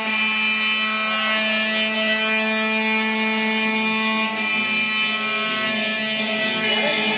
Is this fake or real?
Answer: real